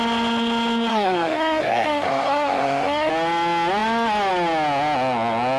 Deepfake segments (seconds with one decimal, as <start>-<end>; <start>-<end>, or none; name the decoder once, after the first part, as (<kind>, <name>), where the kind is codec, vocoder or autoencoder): 0.9-3.1 (codec, SNAC)